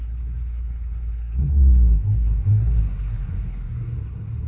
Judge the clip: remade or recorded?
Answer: remade